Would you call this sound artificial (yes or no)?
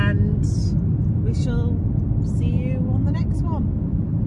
no